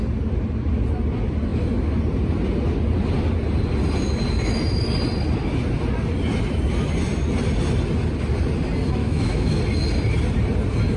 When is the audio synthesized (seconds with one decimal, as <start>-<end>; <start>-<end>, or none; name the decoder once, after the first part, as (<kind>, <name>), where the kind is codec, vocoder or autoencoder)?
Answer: 9.0-9.6 (autoencoder, DAC-VAE)